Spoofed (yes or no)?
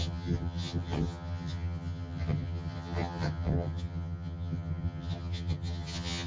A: yes